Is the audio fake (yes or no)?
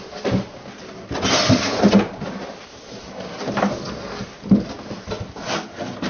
no